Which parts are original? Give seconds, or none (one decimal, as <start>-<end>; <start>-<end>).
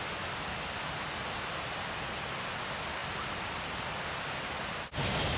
0.0-5.4